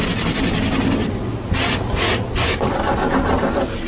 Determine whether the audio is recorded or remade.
recorded